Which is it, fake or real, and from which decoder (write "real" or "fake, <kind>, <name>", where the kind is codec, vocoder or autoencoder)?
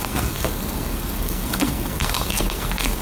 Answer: fake, codec, SNAC